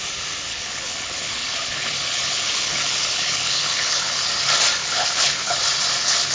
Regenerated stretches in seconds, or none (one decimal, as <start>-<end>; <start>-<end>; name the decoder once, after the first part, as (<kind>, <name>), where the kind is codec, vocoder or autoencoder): 0.5-4.3 (codec, HILCodec); 4.8-5.6

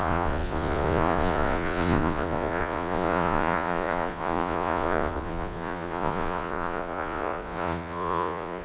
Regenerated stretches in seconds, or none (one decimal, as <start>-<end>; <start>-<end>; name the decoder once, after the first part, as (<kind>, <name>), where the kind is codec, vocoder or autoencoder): 0.0-8.6 (vocoder, Vocos)

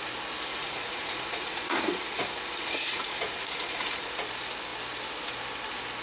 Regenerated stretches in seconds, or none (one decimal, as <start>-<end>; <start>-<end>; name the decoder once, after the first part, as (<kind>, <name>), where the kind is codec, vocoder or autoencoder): 0.5-4.1 (vocoder, Vocos)

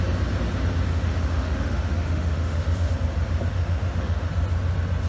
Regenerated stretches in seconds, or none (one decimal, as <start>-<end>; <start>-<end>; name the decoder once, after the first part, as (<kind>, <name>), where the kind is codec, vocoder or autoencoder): 0.9-2.9 (autoencoder, DAC-VAE); 3.5-4.3